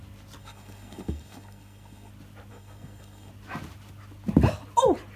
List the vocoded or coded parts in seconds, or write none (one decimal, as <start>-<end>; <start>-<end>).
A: 0.4-2.1; 2.5-3.3